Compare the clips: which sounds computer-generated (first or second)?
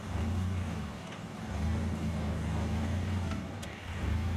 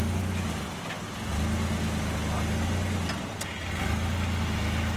first